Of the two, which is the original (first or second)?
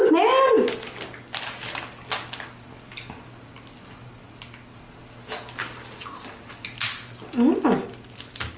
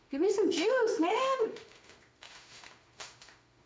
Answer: first